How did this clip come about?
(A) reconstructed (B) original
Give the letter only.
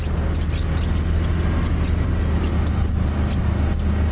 B